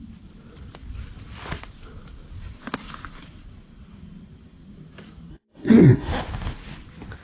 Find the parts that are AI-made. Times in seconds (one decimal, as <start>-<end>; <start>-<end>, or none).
5.3-6.1